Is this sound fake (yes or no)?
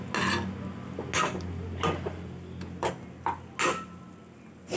no